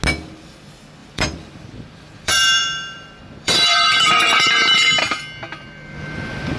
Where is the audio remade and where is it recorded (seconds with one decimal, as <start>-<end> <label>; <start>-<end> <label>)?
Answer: 0.0-1.0 recorded; 1.0-5.0 remade; 5.0-6.6 recorded

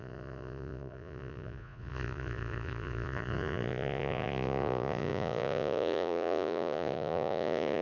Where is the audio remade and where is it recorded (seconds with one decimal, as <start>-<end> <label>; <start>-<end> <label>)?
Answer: 0.0-7.8 remade